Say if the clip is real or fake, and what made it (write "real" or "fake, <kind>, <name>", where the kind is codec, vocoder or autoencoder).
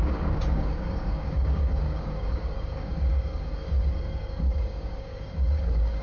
fake, codec, DAC